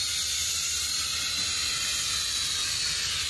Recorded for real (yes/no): yes